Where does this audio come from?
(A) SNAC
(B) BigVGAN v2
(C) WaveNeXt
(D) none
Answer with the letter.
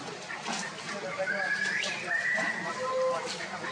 D